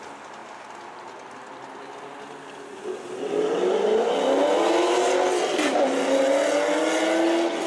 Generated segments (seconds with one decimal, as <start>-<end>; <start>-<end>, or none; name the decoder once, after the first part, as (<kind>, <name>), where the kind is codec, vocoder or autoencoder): none